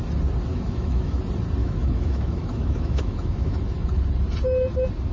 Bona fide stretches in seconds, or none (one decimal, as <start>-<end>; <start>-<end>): 0.0-0.5; 1.2-1.6; 3.9-5.1